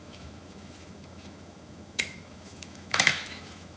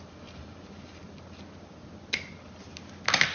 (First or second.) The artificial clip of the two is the first